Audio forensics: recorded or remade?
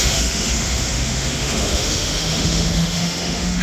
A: remade